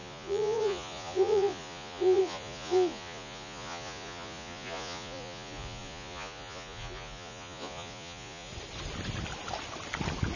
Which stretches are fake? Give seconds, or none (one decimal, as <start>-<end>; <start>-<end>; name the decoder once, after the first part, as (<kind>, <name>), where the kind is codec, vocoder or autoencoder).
0.0-8.5 (vocoder, Vocos)

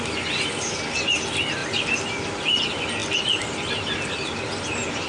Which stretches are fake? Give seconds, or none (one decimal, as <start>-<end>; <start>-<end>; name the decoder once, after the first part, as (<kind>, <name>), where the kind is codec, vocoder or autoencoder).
none

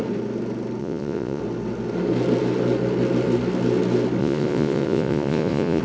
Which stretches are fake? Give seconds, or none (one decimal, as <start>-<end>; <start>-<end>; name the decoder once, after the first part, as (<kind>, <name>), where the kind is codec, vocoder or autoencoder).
0.8-1.4 (vocoder, Vocos); 4.2-5.8